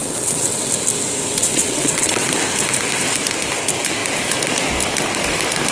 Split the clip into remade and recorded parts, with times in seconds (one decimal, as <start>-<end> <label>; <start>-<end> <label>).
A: 0.0-0.7 remade; 0.7-1.4 recorded; 1.4-2.3 remade; 2.3-5.7 recorded